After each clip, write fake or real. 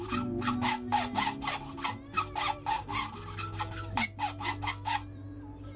real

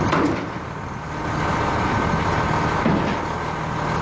real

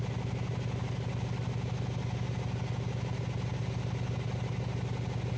real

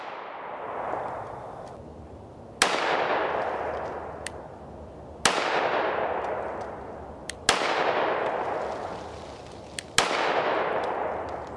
real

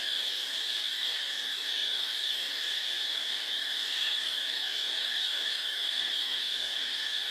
fake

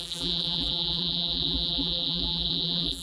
fake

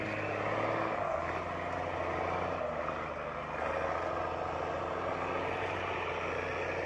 real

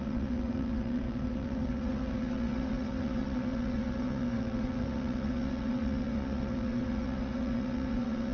fake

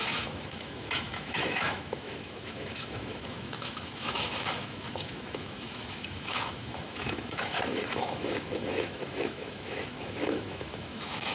fake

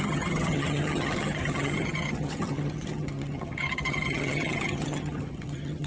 fake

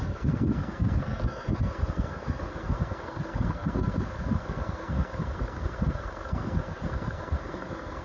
fake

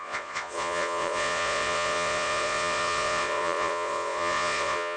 fake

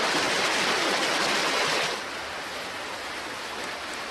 real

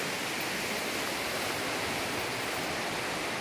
real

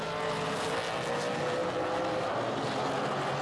real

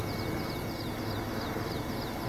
real